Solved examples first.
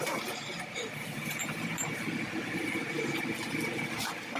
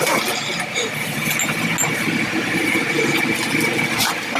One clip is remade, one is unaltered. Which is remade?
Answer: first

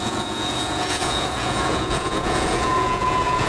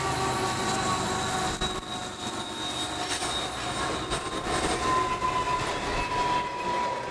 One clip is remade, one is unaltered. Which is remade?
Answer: first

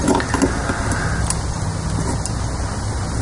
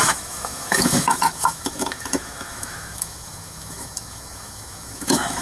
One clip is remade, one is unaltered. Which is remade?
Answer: second